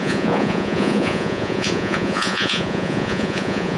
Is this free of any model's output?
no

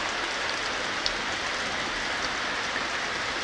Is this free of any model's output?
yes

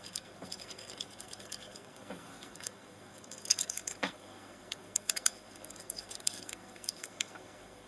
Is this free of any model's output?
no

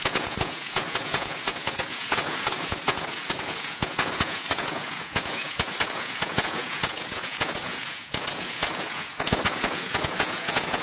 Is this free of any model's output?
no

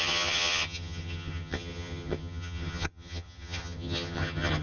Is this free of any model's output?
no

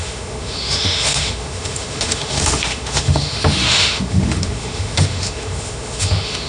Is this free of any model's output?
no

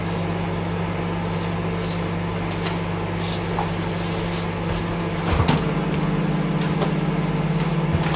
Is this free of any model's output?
yes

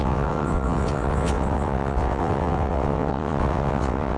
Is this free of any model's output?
no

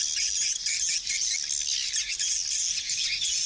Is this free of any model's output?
yes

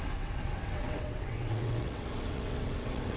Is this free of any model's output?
no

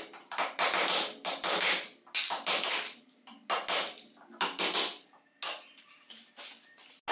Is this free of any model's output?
yes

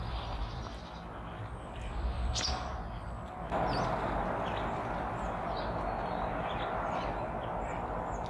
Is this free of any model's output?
yes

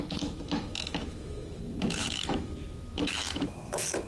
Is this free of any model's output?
no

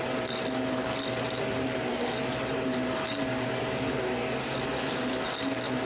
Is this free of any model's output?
yes